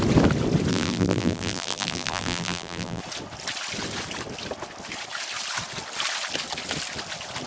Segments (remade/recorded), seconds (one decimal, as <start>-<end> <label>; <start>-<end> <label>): 0.0-0.7 recorded; 0.7-3.0 remade; 3.0-7.5 recorded